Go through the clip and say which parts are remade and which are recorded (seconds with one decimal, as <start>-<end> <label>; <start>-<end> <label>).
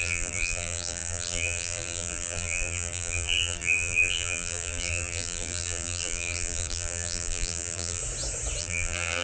0.0-8.0 remade; 8.0-8.6 recorded; 8.6-9.2 remade